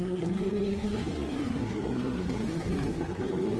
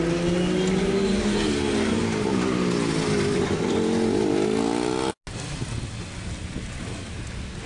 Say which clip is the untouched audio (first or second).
second